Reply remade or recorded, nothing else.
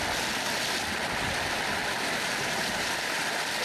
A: recorded